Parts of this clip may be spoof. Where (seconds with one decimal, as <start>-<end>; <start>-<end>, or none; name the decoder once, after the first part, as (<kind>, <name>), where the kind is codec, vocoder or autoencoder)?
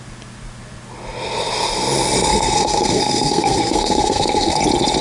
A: 2.3-4.6 (codec, SNAC)